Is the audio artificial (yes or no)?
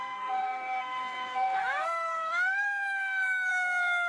yes